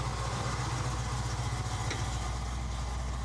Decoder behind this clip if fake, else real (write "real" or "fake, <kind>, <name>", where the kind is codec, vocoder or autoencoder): real